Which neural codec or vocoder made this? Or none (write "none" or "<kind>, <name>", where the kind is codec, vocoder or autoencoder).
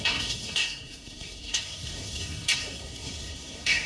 codec, SNAC